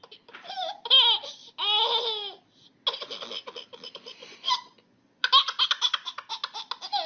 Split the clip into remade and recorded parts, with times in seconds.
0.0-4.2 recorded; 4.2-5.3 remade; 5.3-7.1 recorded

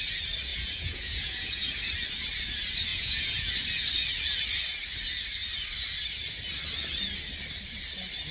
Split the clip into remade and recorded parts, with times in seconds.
0.0-0.5 recorded; 0.5-1.8 remade; 1.8-2.9 recorded; 2.9-3.5 remade; 3.5-8.3 recorded

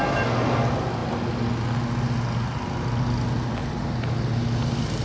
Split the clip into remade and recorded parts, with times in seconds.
0.0-5.0 recorded

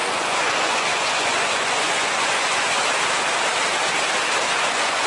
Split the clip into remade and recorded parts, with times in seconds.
0.0-2.8 remade; 2.8-4.5 recorded; 4.5-5.1 remade

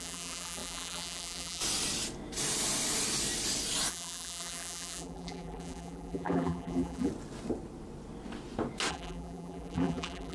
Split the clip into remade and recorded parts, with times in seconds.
0.0-1.6 remade; 1.6-3.9 recorded; 3.9-7.1 remade; 7.1-8.9 recorded; 8.9-10.3 remade

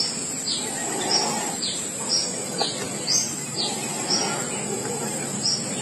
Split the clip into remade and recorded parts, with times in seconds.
0.0-5.8 recorded

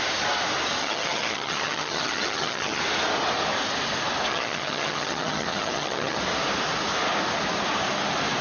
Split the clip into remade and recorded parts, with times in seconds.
0.0-0.8 recorded; 0.8-2.8 remade; 2.8-4.3 recorded; 4.3-6.2 remade; 6.2-8.4 recorded